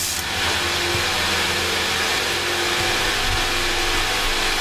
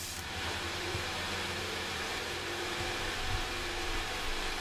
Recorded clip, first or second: first